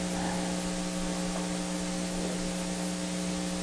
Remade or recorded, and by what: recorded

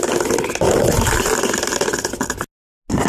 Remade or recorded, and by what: recorded